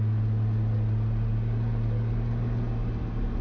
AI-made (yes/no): no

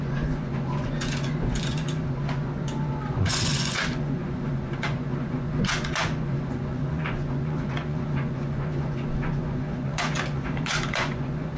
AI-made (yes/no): yes